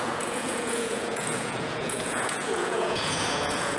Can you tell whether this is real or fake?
fake